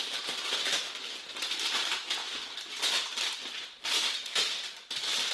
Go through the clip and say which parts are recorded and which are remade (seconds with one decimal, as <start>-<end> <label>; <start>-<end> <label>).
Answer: 0.0-2.2 remade; 2.2-2.8 recorded; 2.8-4.2 remade; 4.2-4.8 recorded; 4.8-5.3 remade

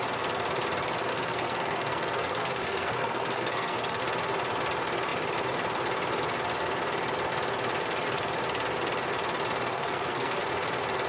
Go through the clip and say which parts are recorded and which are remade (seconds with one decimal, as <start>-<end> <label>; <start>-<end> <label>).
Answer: 0.0-1.1 recorded; 1.1-4.0 remade; 4.0-9.7 recorded; 9.7-10.4 remade; 10.4-11.1 recorded

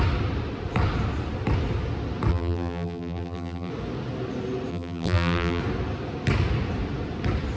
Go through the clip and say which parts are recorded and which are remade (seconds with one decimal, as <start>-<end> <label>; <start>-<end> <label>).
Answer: 0.0-2.3 recorded; 2.3-3.7 remade; 3.7-4.7 recorded; 4.7-5.6 remade; 5.6-7.6 recorded